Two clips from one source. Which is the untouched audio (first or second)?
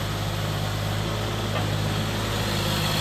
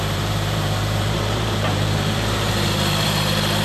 first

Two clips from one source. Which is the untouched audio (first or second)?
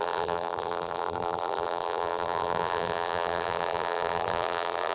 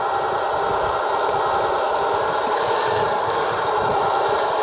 second